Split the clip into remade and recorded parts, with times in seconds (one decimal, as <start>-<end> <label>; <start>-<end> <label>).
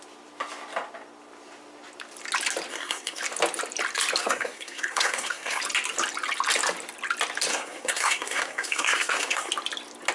0.0-2.7 recorded; 2.7-3.2 remade; 3.2-4.2 recorded; 4.2-5.6 remade; 5.6-7.5 recorded; 7.5-9.5 remade; 9.5-10.1 recorded